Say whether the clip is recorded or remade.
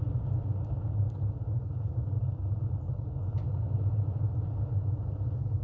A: recorded